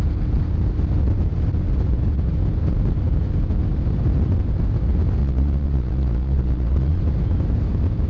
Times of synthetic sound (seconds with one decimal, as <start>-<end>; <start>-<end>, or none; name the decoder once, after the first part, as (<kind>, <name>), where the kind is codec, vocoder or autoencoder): 5.2-7.0 (vocoder, Vocos)